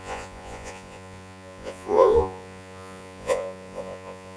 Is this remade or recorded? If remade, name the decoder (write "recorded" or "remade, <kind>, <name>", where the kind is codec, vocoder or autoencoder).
remade, vocoder, Vocos